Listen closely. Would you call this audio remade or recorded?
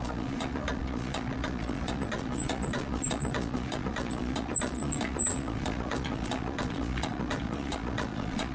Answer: remade